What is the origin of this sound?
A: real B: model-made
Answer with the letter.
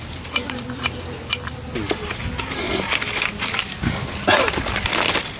A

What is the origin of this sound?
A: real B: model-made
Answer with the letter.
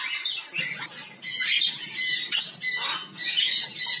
A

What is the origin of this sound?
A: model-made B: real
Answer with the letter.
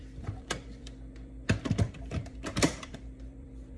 A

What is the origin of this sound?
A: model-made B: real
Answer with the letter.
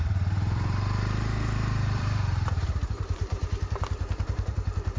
A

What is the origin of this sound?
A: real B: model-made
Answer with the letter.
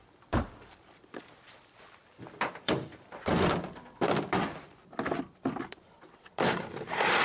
B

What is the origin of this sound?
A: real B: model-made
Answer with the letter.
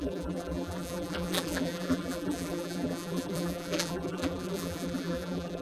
B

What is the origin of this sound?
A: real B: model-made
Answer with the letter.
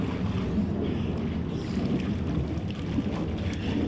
A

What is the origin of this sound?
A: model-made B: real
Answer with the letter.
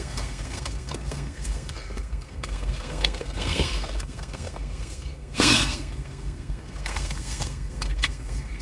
A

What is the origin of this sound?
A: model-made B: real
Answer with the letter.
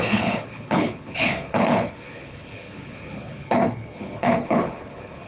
A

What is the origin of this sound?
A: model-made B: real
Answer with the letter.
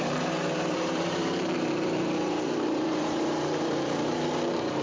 A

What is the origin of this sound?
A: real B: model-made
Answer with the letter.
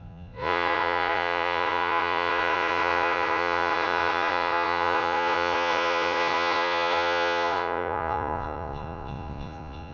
B